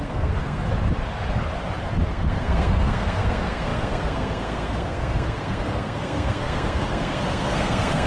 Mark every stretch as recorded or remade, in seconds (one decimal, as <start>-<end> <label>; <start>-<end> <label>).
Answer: 0.0-0.6 remade; 0.6-2.1 recorded; 2.1-8.1 remade